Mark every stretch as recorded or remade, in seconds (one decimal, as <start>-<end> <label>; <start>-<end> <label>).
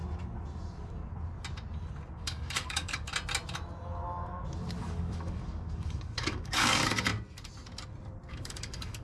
0.0-2.1 recorded; 2.1-3.1 remade; 3.1-4.8 recorded; 4.8-7.1 remade; 7.1-8.3 recorded; 8.3-9.0 remade